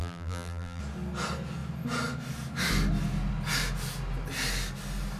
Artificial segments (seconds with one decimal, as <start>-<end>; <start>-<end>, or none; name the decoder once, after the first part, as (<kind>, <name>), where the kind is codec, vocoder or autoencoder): 0.0-0.8 (vocoder, BigVGAN v2)